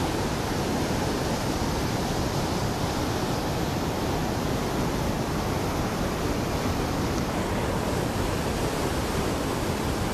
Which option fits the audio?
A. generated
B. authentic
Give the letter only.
B